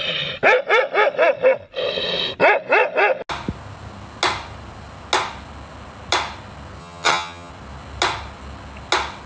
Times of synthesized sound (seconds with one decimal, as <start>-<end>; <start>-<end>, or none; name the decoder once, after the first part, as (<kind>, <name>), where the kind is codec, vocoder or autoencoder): 6.8-7.5 (vocoder, HiFi-GAN)